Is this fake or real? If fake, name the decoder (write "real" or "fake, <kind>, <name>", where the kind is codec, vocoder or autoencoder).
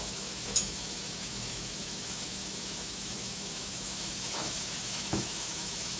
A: fake, autoencoder, DAC-VAE